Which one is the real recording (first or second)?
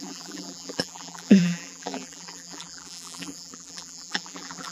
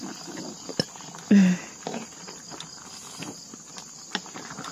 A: second